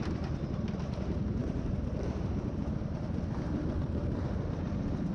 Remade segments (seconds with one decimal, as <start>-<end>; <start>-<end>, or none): 1.4-4.5